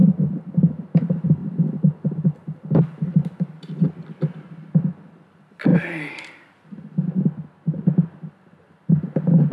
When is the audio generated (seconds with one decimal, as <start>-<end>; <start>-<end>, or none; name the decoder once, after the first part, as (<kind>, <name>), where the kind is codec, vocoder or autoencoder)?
none